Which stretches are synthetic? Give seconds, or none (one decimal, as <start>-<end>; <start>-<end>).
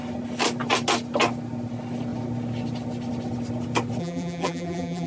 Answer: 4.0-5.1